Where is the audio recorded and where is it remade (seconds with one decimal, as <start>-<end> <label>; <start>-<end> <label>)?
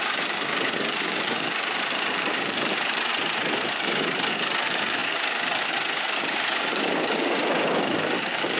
0.0-3.1 remade; 3.1-3.7 recorded; 3.7-8.6 remade